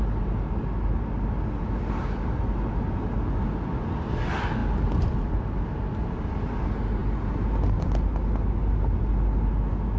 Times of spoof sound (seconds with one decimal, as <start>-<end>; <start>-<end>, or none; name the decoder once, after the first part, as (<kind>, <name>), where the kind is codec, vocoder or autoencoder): none